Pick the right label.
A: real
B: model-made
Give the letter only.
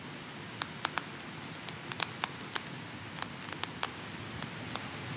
A